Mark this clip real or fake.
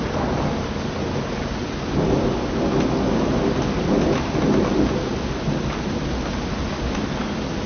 real